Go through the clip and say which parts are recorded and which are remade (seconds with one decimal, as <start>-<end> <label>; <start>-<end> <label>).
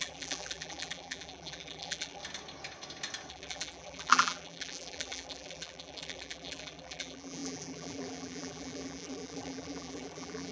0.0-2.2 remade; 2.2-3.3 recorded; 3.3-10.5 remade